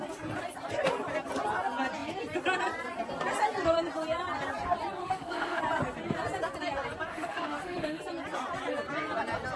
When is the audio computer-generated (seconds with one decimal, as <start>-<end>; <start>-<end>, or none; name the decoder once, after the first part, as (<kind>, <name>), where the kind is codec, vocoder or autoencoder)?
5.0-5.6 (autoencoder, DAC-VAE); 7.1-8.0

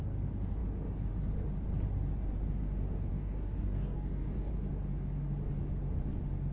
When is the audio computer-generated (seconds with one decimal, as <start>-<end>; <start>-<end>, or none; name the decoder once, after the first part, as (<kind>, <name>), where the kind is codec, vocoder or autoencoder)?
3.1-4.5 (codec, DAC)

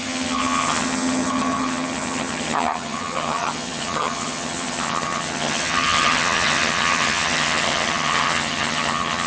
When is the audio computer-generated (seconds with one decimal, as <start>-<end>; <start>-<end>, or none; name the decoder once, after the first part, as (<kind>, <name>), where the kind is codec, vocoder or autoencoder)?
0.0-9.3 (vocoder, HiFi-GAN)

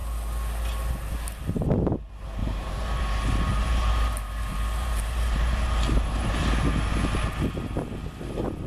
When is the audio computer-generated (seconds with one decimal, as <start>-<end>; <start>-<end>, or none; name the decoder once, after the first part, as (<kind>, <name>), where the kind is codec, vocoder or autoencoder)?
2.4-3.0 (vocoder, BigVGAN v2); 3.6-6.3

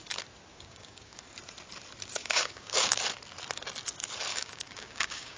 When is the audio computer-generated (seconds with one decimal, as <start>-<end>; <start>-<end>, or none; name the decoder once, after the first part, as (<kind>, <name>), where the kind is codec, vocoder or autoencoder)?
0.5-1.2 (codec, DAC); 2.2-3.0; 4.3-5.4

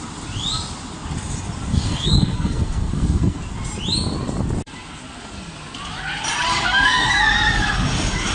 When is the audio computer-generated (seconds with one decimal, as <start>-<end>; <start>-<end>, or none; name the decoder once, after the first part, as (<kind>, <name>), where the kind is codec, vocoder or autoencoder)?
1.7-3.4 (codec, SNAC); 6.5-7.1

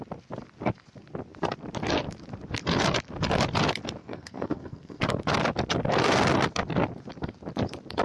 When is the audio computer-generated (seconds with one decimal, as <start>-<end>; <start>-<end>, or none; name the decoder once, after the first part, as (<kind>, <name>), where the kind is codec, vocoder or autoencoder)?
4.0-5.0 (codec, SNAC)